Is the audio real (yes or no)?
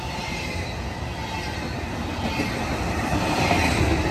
yes